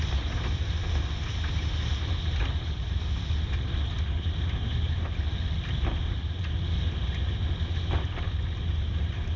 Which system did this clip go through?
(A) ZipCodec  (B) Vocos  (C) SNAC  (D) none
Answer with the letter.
D